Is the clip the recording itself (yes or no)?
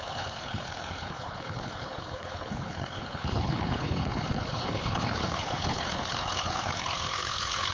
no